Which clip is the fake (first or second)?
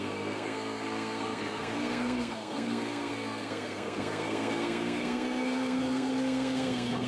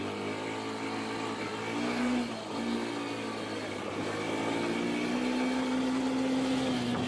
first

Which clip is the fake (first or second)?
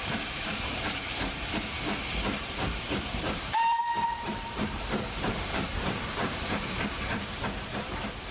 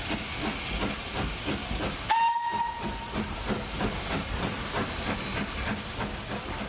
first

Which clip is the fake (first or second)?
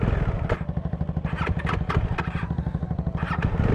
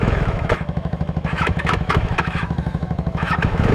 second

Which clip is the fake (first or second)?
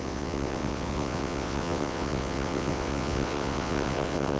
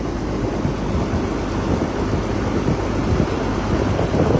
first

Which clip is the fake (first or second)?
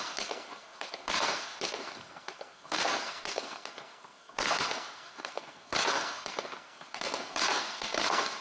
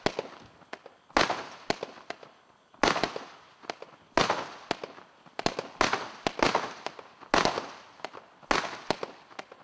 first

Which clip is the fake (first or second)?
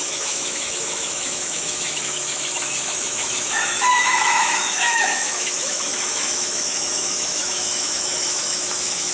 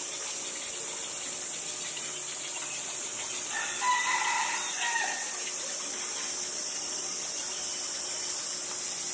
first